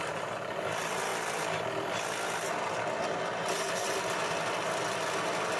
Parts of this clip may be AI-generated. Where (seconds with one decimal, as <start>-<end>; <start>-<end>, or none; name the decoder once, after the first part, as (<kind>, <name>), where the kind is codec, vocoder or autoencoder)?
1.1-1.9 (vocoder, BigVGAN v2)

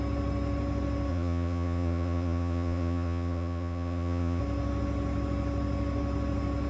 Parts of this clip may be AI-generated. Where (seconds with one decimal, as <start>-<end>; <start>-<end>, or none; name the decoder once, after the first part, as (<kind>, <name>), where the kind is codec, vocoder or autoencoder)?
1.1-4.4 (vocoder, Vocos)

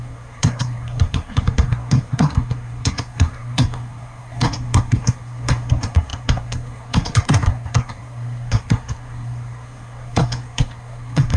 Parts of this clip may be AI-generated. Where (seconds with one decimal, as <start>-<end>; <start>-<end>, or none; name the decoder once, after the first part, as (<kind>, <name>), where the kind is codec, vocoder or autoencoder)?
0.0-11.4 (codec, SNAC)